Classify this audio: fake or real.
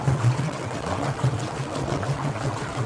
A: fake